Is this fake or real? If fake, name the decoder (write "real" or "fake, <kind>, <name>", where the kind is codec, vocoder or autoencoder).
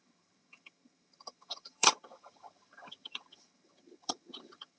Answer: fake, vocoder, HiFi-GAN